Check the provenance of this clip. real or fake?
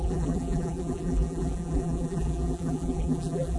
fake